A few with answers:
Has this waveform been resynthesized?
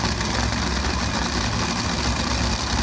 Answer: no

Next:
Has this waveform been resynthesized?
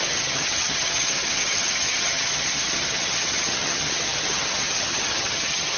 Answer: yes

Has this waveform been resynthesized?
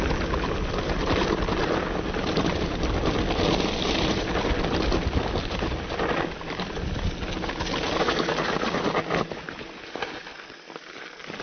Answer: no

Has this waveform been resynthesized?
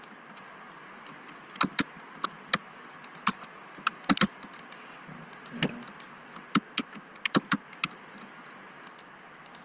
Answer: no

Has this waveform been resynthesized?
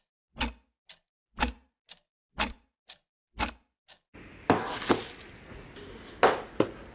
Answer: no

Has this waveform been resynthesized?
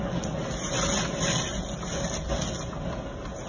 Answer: no